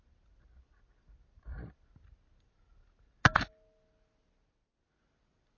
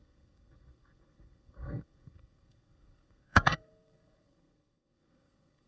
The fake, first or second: second